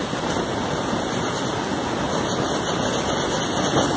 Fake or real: real